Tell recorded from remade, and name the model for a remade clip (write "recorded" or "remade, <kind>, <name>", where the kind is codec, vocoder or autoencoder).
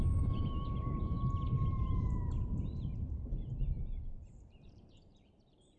remade, vocoder, BigVGAN v2